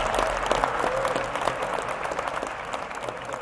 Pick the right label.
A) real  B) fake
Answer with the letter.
A